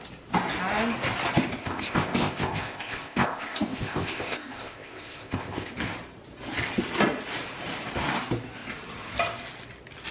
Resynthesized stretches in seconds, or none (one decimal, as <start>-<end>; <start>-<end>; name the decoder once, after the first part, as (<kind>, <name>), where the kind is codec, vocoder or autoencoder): 1.6-5.7 (codec, ZipCodec)

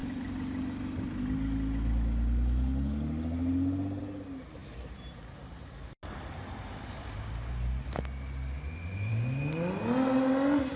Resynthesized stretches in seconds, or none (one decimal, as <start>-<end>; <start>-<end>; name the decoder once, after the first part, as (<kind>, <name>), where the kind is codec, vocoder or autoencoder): none

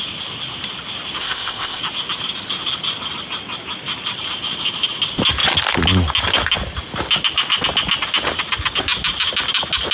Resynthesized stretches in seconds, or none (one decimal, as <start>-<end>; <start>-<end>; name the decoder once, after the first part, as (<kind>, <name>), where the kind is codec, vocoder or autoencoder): 1.2-1.8 (codec, ZipCodec)

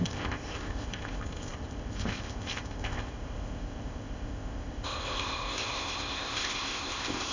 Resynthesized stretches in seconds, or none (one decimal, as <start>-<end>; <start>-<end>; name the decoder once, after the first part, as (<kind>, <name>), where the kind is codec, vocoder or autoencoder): 0.0-7.3 (codec, ZipCodec)

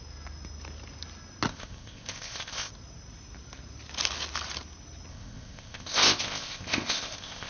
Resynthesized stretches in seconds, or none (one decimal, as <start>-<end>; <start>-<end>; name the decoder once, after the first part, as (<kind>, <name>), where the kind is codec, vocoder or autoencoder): 1.5-2.7 (codec, ZipCodec); 5.1-7.5